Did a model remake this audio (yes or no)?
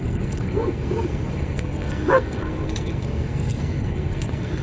yes